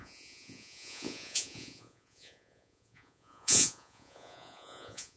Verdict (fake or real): fake